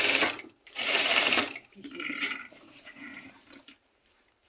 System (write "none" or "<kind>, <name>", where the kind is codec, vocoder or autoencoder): vocoder, BigVGAN v2